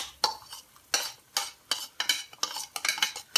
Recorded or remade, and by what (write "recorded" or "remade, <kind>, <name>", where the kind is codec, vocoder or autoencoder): recorded